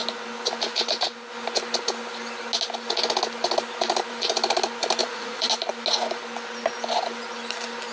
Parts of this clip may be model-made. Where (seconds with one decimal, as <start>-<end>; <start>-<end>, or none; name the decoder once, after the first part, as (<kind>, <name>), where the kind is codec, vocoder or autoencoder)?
5.0-5.5 (vocoder, Vocos)